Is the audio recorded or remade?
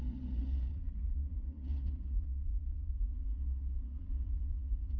remade